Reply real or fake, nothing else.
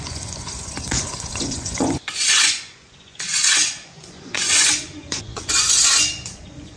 fake